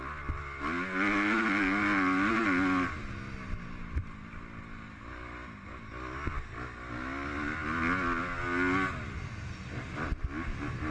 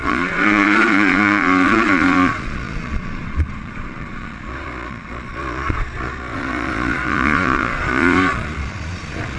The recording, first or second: first